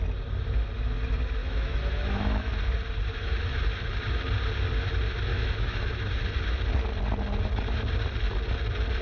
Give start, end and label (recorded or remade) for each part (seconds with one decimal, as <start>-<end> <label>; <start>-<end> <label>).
0.0-1.4 recorded; 1.4-2.5 remade; 2.5-5.3 recorded; 5.3-5.9 remade; 5.9-9.0 recorded